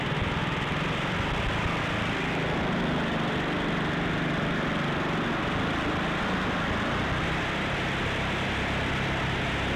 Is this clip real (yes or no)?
yes